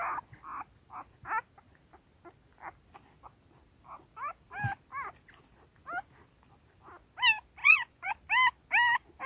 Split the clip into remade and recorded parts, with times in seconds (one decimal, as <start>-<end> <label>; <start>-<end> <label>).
0.0-7.6 recorded; 7.6-8.1 remade; 8.1-9.3 recorded